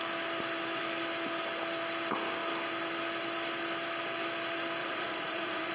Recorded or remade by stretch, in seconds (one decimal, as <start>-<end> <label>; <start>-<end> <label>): 0.0-4.8 recorded; 4.8-5.7 remade